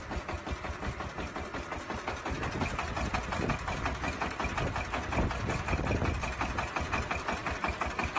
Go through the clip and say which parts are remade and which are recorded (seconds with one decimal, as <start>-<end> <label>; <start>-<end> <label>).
0.0-7.4 recorded; 7.4-8.2 remade